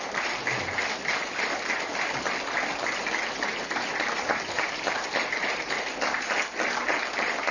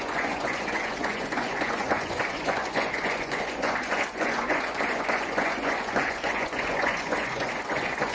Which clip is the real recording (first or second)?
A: first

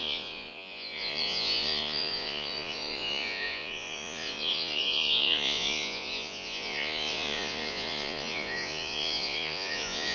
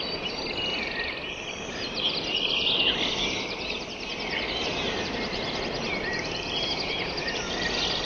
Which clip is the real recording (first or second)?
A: second